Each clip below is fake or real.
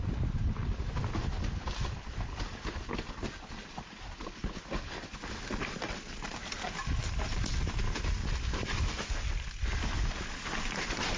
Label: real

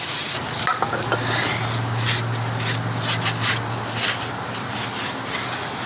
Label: real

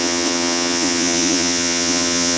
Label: fake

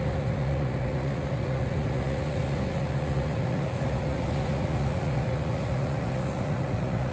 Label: fake